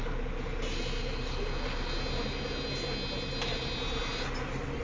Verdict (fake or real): real